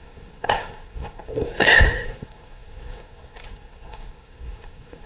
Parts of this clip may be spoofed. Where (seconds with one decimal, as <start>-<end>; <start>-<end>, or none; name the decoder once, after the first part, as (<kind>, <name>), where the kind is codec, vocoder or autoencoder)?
0.0-5.1 (codec, SNAC)